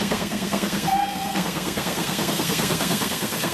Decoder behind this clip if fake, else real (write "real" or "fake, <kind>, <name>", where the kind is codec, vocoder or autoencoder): fake, codec, SNAC